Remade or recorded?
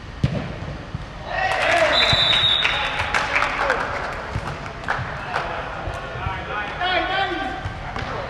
recorded